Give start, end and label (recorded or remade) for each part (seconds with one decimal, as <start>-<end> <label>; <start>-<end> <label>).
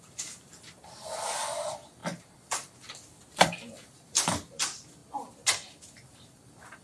0.0-2.0 remade; 2.0-2.5 recorded; 2.5-5.0 remade; 5.0-6.3 recorded; 6.3-6.8 remade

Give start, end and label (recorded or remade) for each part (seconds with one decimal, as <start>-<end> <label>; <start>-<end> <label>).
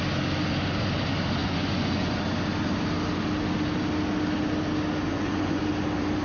0.0-1.4 recorded; 1.4-2.2 remade; 2.2-5.1 recorded; 5.1-5.6 remade; 5.6-6.2 recorded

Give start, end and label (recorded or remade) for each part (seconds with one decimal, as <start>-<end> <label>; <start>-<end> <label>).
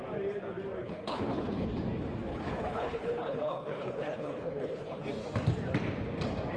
0.0-0.8 recorded; 0.8-1.7 remade; 1.7-2.3 recorded; 2.3-5.0 remade; 5.0-6.6 recorded